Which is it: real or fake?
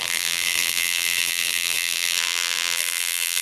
fake